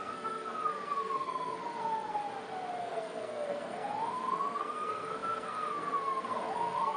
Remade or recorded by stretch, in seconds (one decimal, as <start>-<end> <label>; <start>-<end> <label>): 0.0-2.2 remade; 2.2-2.8 recorded; 2.8-7.0 remade